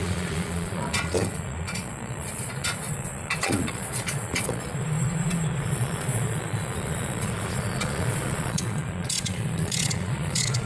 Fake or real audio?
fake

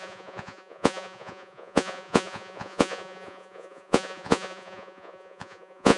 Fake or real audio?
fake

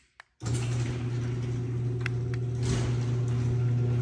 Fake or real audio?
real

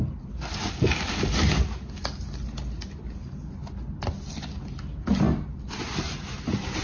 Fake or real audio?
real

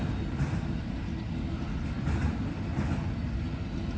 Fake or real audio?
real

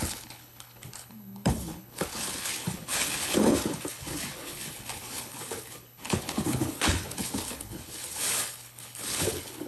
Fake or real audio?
fake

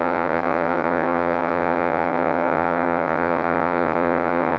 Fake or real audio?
fake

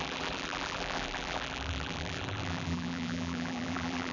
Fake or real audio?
fake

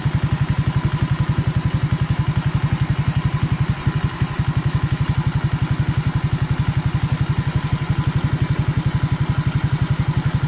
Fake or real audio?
real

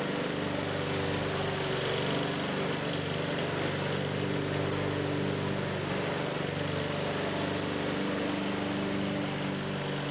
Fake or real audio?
real